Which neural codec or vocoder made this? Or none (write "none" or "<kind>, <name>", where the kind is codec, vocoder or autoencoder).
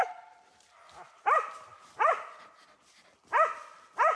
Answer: none